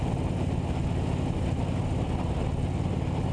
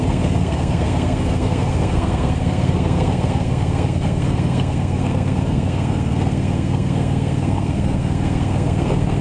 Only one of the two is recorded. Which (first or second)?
first